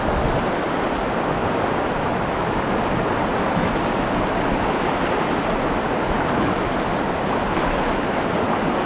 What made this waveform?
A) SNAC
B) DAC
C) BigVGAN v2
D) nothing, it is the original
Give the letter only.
D